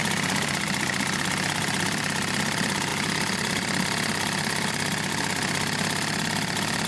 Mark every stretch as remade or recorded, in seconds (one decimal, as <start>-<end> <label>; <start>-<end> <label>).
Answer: 0.0-6.9 recorded